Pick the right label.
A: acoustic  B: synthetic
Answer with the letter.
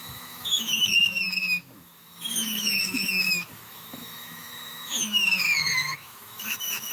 B